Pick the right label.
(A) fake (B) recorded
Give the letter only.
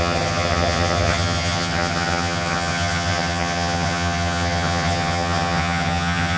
A